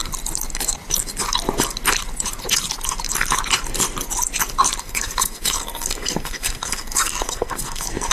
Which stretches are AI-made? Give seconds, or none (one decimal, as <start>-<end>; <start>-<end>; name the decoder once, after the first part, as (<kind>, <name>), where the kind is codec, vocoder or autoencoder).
4.8-8.1 (codec, SNAC)